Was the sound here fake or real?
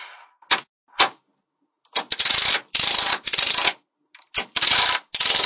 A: real